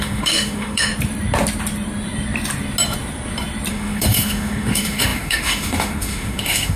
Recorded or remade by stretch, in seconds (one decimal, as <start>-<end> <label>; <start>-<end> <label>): 0.0-0.9 remade; 0.9-3.7 recorded; 3.7-6.8 remade